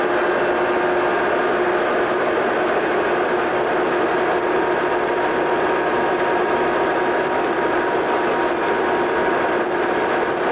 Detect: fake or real real